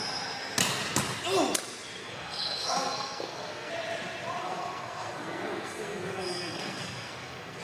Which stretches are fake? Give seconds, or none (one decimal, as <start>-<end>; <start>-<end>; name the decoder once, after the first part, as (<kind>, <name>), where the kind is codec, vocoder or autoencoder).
2.0-3.7 (codec, SNAC); 4.4-7.6